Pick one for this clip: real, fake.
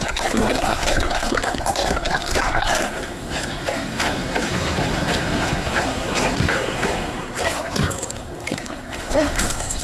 fake